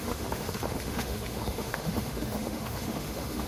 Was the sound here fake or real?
fake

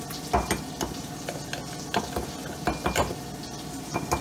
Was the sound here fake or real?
real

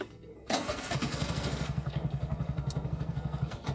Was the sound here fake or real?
fake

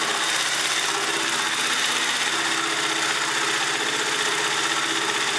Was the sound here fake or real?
real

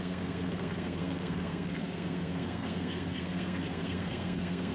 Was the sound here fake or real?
fake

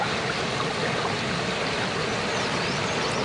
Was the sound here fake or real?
real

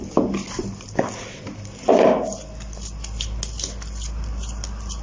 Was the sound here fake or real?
real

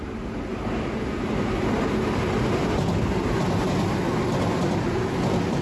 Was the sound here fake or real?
real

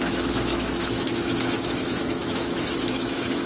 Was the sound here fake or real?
fake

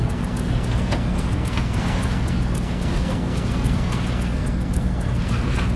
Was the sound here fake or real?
fake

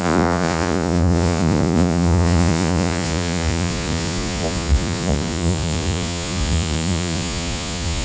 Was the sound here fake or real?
fake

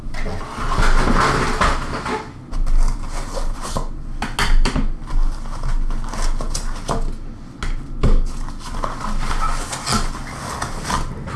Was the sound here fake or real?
real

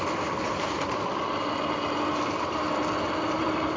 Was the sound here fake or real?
real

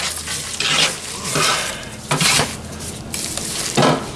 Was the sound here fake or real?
real